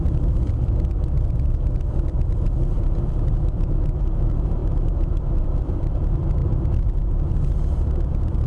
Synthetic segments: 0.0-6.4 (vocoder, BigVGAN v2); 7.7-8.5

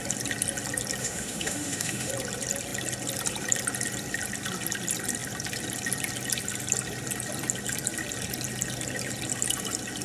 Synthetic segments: 1.0-2.1 (autoencoder, DAC-VAE)

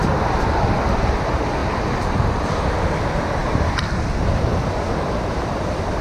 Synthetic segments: 3.4-6.0 (vocoder, BigVGAN v2)

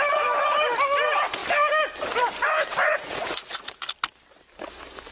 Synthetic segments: 2.8-3.8 (vocoder, Vocos)